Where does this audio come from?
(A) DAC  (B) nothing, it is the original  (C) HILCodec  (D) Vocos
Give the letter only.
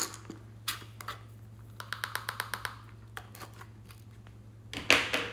B